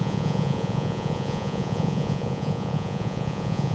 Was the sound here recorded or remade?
remade